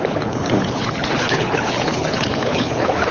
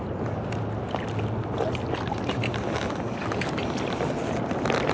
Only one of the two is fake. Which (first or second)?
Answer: first